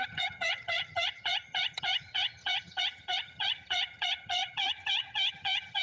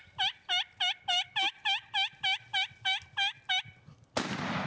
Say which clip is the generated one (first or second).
first